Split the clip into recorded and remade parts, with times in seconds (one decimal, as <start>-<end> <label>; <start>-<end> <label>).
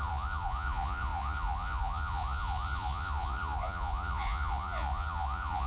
0.0-5.7 remade